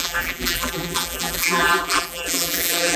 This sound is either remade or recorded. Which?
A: remade